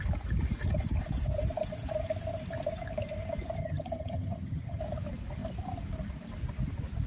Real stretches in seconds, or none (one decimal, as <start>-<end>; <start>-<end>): 0.0-3.6; 4.8-7.1